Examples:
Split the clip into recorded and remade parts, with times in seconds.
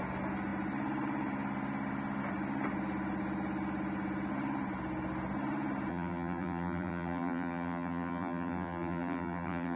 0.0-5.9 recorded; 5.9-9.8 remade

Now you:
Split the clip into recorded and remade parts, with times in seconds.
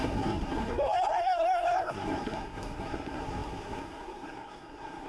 0.0-5.1 remade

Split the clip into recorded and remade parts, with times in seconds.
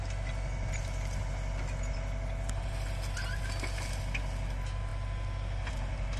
0.0-6.2 recorded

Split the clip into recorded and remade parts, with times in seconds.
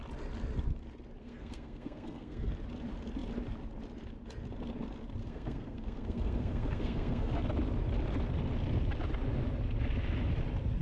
0.0-1.2 recorded; 1.2-2.5 remade; 2.5-5.2 recorded; 5.2-7.3 remade; 7.3-10.8 recorded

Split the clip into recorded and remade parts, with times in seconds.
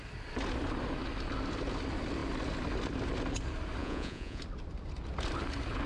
0.0-3.8 recorded; 3.8-4.4 remade; 4.4-5.9 recorded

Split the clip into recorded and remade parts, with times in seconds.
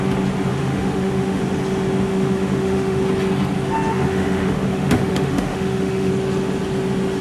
0.0-0.5 recorded; 0.5-1.4 remade; 1.4-2.1 recorded; 2.1-3.0 remade; 3.0-3.9 recorded; 3.9-6.1 remade; 6.1-7.2 recorded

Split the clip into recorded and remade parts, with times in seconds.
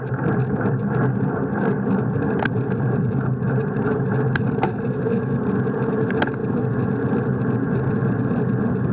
0.0-8.9 recorded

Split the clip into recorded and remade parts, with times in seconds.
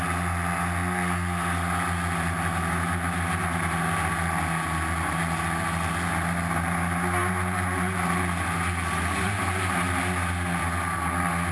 0.0-11.5 recorded